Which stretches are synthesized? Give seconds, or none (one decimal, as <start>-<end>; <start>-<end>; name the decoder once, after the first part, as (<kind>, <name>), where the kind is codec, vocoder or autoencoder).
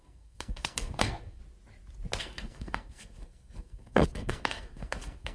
0.0-1.4 (codec, SNAC); 2.2-5.3